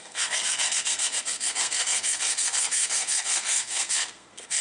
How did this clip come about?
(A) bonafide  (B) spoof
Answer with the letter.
B